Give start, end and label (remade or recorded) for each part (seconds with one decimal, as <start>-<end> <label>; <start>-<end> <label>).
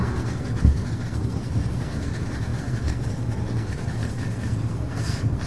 0.0-5.5 remade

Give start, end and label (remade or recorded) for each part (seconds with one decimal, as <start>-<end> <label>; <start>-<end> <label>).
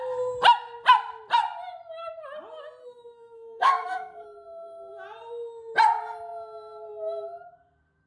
0.0-2.8 recorded; 2.8-4.9 remade; 4.9-8.1 recorded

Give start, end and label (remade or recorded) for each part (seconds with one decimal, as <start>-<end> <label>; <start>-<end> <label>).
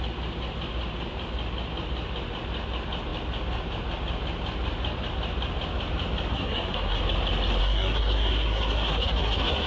0.0-6.3 recorded; 6.3-7.0 remade; 7.0-7.6 recorded; 7.6-9.7 remade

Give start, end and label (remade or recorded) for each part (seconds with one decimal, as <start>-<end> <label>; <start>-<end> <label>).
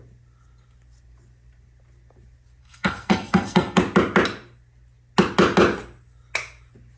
0.0-2.6 recorded; 2.6-3.8 remade; 3.8-7.0 recorded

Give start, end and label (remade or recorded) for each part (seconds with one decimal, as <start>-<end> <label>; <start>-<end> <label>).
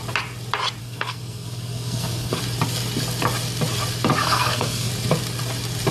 0.0-0.8 recorded; 0.8-2.4 remade; 2.4-4.2 recorded; 4.2-4.9 remade; 4.9-5.9 recorded